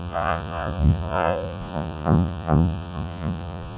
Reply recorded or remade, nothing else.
remade